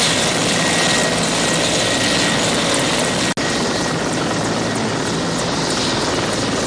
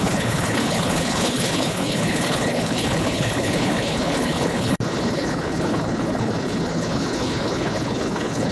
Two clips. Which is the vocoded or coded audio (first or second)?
second